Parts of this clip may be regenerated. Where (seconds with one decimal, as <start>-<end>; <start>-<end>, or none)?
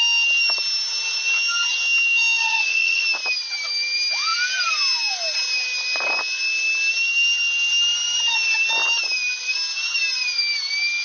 2.4-3.0